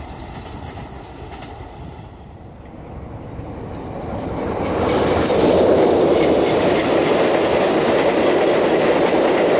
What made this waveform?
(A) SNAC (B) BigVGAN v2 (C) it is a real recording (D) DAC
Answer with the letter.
C